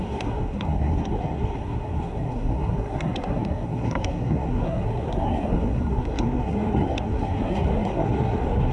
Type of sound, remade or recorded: remade